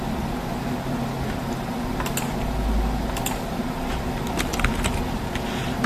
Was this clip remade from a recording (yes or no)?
no